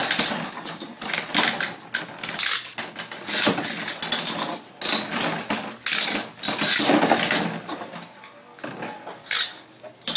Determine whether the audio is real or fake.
real